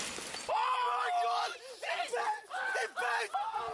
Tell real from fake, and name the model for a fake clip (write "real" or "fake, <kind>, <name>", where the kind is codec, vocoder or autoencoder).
real